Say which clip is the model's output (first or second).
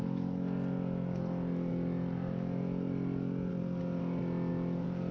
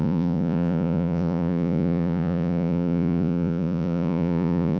second